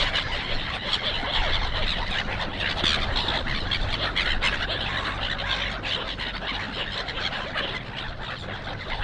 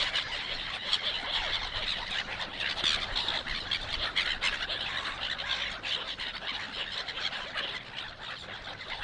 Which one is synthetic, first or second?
second